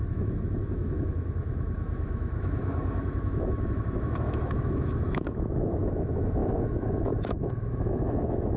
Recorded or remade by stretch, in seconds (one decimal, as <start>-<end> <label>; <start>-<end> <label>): 0.0-8.6 remade